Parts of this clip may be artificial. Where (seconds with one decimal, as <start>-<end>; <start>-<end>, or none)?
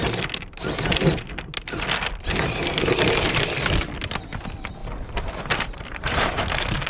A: 4.8-6.4